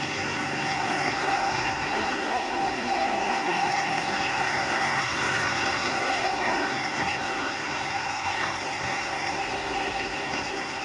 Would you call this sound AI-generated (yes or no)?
yes